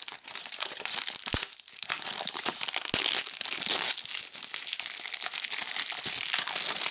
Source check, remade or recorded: recorded